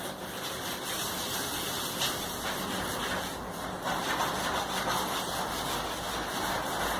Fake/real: real